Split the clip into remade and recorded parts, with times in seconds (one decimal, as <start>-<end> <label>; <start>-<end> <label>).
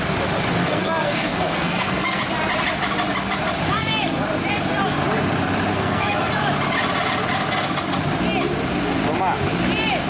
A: 0.0-0.6 recorded; 0.6-2.2 remade; 2.2-5.7 recorded; 5.7-6.3 remade; 6.3-10.1 recorded